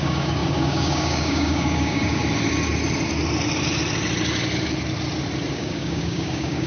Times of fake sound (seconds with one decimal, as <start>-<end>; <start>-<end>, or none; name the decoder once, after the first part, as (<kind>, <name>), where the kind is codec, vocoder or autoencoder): 0.0-2.2 (codec, DAC); 5.5-6.7